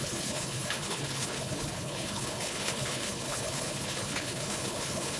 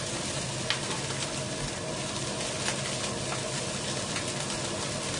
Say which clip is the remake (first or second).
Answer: first